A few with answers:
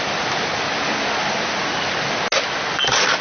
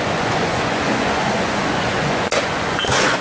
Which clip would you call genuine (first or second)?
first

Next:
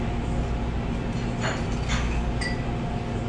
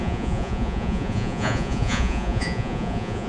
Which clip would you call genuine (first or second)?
first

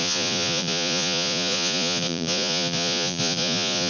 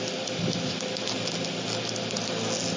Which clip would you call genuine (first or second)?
second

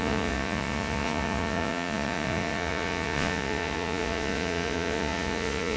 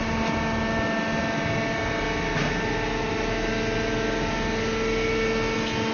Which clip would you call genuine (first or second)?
second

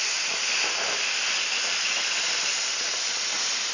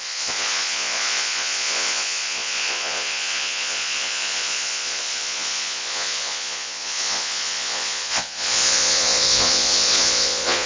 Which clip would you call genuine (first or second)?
first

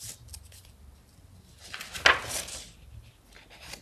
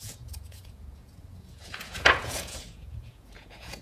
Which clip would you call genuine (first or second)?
first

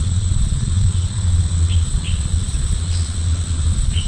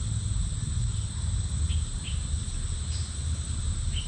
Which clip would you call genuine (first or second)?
second